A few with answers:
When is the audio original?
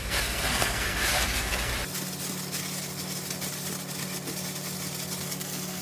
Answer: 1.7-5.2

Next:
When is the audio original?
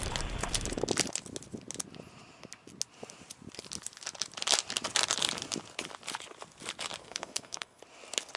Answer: 0.0-7.0; 7.8-8.4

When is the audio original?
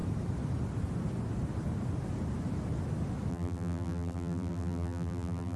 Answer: 0.0-3.3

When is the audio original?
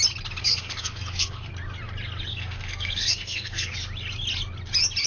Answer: 0.0-0.4; 1.5-2.3; 3.7-5.1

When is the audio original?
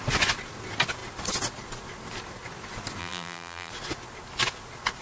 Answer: 0.0-3.0; 3.7-5.0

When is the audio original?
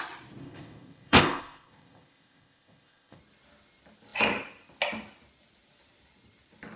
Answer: 0.0-0.4; 3.2-6.8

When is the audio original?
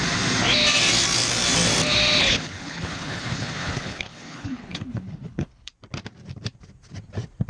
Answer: 0.0-2.2; 5.7-7.5